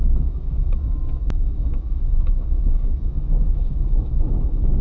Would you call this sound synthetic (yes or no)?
yes